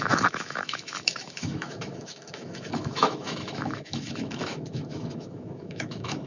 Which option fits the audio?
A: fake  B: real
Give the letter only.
A